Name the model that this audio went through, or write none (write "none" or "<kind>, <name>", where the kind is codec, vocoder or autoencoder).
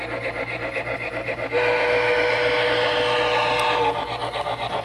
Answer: none